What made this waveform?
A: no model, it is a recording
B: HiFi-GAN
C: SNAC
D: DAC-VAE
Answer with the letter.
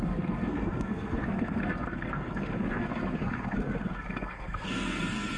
C